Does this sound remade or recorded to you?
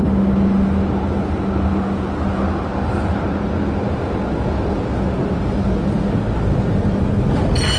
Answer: recorded